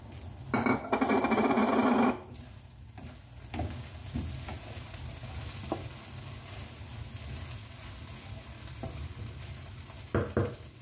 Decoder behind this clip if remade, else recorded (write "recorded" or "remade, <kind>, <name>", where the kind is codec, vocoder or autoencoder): recorded